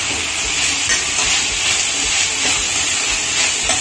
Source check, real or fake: real